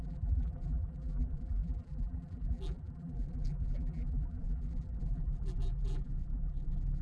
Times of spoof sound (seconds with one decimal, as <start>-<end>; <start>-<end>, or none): 0.0-7.0